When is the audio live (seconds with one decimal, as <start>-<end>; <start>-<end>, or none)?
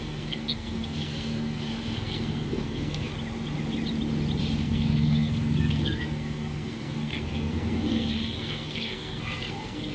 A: 3.1-4.6